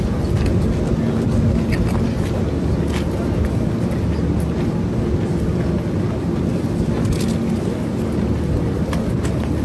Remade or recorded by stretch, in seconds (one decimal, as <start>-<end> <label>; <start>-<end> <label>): 0.0-9.6 recorded